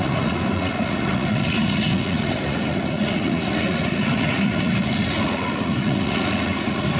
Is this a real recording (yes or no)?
no